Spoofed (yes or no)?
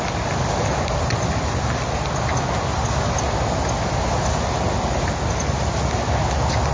no